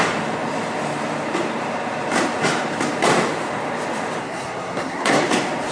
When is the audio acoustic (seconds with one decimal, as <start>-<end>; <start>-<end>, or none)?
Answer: 0.0-4.2; 5.2-5.7